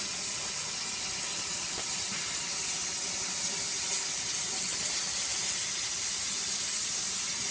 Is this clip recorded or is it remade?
recorded